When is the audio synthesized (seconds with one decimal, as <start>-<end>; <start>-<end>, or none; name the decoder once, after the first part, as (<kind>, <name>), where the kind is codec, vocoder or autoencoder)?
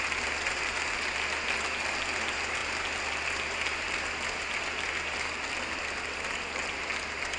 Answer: none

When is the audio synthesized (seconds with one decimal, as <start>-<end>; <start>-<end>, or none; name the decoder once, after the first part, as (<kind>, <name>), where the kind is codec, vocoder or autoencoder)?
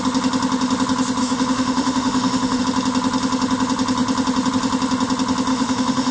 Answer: 1.2-2.6 (autoencoder, DAC-VAE); 5.5-6.1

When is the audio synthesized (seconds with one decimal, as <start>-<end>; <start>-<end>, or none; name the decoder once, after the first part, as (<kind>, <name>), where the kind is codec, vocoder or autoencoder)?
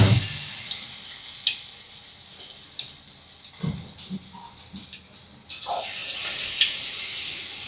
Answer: 6.0-6.9 (vocoder, BigVGAN v2)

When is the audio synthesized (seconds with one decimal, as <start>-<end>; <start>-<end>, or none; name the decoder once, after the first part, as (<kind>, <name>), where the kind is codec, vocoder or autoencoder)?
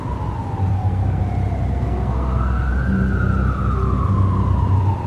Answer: 0.7-1.2 (codec, SNAC); 1.7-2.7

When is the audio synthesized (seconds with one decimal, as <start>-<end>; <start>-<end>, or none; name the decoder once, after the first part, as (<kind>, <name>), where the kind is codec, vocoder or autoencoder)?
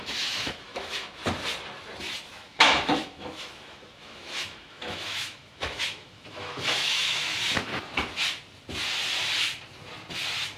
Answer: 0.0-1.2 (autoencoder, DAC-VAE); 2.2-7.7